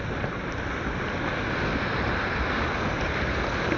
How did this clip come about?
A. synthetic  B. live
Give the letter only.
B